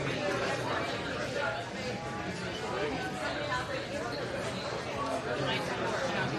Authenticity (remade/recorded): recorded